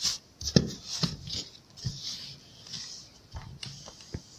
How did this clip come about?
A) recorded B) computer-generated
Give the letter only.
A